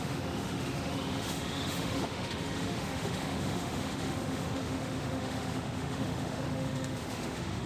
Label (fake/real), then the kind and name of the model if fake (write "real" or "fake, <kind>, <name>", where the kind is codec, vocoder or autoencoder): fake, autoencoder, DAC-VAE